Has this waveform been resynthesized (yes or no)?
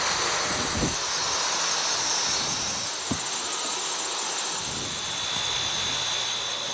no